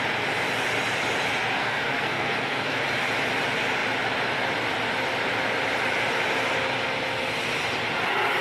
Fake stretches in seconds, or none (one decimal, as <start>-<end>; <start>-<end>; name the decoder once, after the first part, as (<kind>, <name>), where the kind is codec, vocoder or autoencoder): 1.6-2.8 (codec, SNAC)